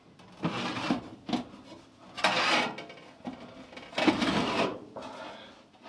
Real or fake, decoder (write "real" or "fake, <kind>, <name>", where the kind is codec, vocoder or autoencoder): real